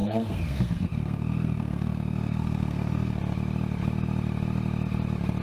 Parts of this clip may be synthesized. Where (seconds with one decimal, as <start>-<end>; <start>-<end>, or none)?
0.0-3.2